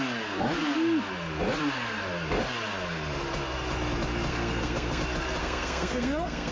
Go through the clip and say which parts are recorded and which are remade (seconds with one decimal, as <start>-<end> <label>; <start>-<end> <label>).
0.0-4.3 recorded; 4.3-5.0 remade; 5.0-5.4 recorded; 5.4-6.5 remade